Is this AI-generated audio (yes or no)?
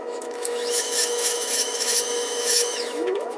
yes